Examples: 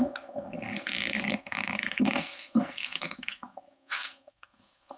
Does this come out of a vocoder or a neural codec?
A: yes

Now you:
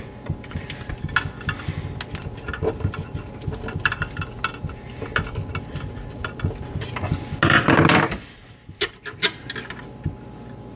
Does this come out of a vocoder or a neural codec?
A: no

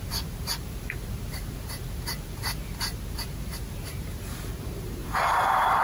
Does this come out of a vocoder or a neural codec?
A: yes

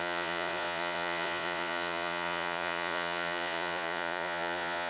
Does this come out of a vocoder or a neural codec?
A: yes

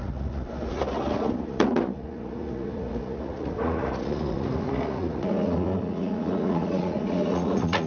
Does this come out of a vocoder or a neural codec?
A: yes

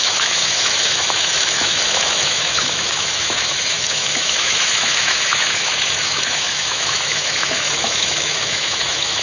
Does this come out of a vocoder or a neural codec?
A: yes